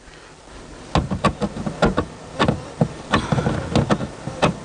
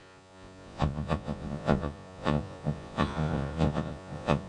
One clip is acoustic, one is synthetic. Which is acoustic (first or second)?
first